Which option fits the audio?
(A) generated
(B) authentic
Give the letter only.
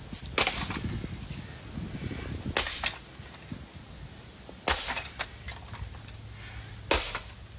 B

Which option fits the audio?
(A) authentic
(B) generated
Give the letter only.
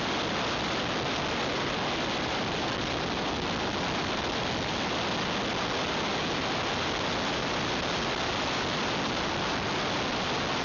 A